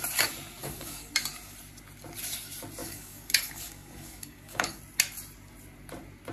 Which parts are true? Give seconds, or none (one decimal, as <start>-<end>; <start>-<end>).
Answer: 0.0-0.6; 1.1-2.8; 4.8-6.3